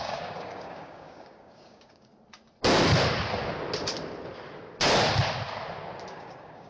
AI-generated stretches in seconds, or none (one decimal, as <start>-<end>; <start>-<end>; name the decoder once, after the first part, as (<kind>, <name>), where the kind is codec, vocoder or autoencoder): 0.0-2.1 (codec, DAC); 6.1-6.7

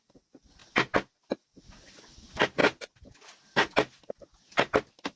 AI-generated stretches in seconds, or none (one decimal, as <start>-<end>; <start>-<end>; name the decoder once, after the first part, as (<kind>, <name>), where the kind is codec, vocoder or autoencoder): none

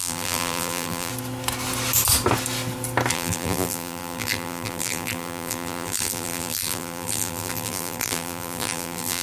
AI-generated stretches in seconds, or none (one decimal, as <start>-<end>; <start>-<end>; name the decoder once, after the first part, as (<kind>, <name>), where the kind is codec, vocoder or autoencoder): 0.0-1.1 (vocoder, BigVGAN v2); 3.1-9.2

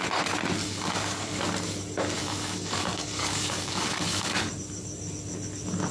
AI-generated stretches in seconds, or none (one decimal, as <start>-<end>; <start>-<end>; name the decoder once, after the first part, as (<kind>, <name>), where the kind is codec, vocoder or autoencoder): 0.6-1.4 (codec, DAC); 2.2-4.5

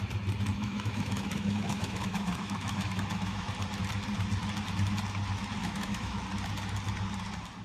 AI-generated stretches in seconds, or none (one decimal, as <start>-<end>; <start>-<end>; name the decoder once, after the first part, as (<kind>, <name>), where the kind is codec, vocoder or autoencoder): 0.5-3.5 (autoencoder, DAC-VAE); 5.6-6.2

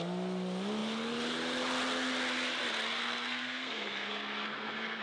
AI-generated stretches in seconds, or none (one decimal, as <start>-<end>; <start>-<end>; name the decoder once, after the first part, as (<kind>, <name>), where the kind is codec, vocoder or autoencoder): 3.0-5.0 (codec, SNAC)